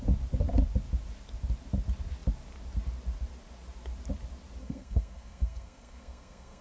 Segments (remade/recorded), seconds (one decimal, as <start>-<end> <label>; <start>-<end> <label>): 0.0-4.6 recorded; 4.6-6.6 remade